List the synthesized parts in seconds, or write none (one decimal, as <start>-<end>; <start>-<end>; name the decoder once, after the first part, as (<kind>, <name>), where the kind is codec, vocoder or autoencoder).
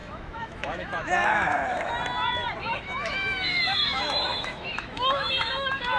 0.0-1.9 (autoencoder, DAC-VAE); 2.6-6.0